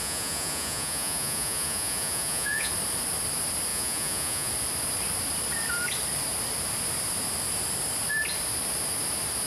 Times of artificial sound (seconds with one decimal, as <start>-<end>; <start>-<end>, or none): 0.0-2.7; 3.7-4.5